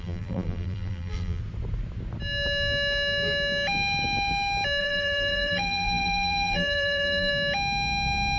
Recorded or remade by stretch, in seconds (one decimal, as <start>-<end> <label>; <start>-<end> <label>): 0.0-1.4 remade; 1.4-4.8 recorded; 4.8-7.3 remade; 7.3-8.4 recorded